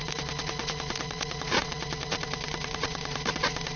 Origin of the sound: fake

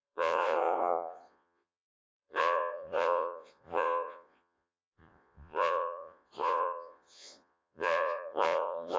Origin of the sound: fake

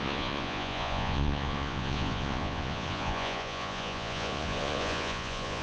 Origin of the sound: fake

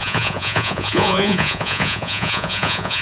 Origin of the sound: fake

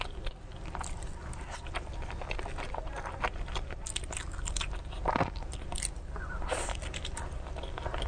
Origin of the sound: real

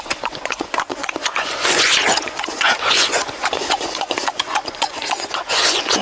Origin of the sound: fake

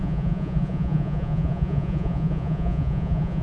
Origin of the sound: fake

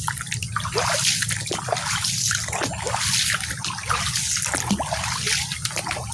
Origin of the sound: real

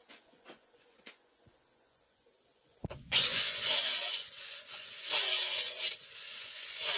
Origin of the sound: fake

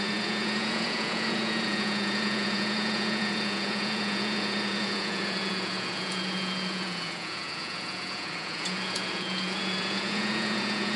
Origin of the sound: fake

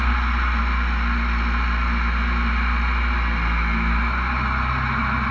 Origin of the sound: real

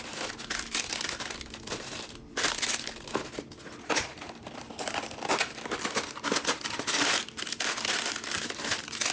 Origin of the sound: real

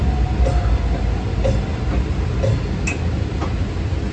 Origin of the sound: real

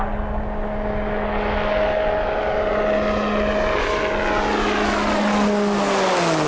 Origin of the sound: real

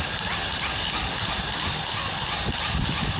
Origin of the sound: real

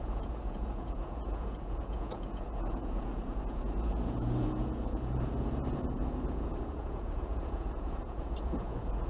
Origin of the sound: fake